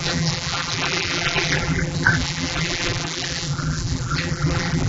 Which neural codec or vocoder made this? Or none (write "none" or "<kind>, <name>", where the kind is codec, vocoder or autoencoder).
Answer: vocoder, BigVGAN v2